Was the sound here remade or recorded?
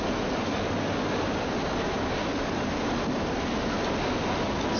recorded